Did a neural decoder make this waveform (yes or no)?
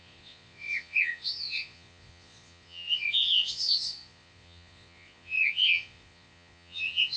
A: yes